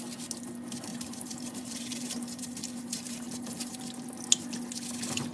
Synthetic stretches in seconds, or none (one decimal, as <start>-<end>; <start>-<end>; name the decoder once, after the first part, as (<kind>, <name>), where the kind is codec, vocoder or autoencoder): 0.9-3.8 (vocoder, BigVGAN v2)